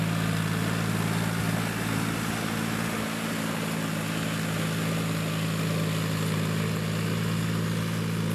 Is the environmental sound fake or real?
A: real